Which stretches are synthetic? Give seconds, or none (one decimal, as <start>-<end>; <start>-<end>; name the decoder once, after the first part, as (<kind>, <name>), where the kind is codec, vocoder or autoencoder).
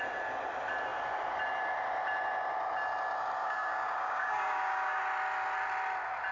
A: 3.4-5.0 (codec, DAC)